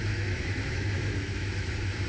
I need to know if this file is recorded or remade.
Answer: remade